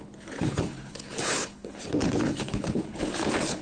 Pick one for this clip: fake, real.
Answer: fake